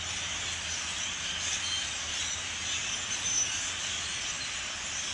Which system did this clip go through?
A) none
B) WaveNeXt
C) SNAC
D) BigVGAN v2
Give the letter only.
A